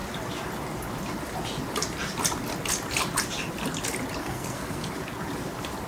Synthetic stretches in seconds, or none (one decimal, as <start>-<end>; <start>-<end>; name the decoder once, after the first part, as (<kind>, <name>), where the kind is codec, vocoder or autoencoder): 4.2-4.9 (codec, SNAC)